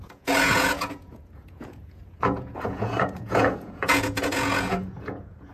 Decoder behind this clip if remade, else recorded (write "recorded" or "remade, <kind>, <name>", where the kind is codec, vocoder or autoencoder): remade, vocoder, Vocos